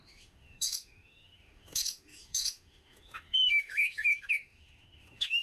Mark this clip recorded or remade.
remade